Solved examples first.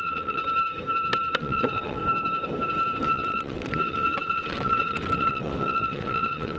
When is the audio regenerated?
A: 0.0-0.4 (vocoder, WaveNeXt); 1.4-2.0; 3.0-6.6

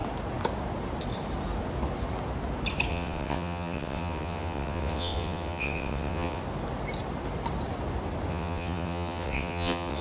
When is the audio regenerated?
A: 2.9-6.4 (vocoder, WaveNeXt); 8.3-10.0

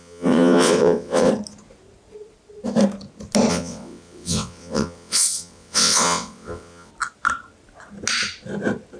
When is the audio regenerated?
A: 0.0-1.3 (vocoder, WaveNeXt); 3.5-6.9

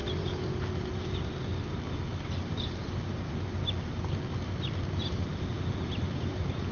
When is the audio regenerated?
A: none

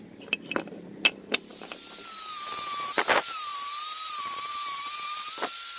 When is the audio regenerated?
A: none

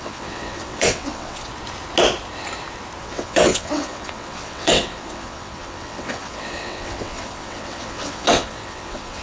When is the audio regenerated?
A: 0.0-1.5 (vocoder, WaveNeXt); 3.0-9.2

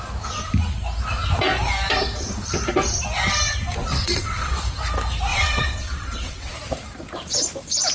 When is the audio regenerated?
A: 3.8-4.6 (vocoder, WaveNeXt); 5.3-6.5